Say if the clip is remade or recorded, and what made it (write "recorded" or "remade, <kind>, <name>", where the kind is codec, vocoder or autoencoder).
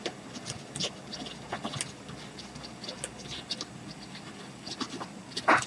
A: recorded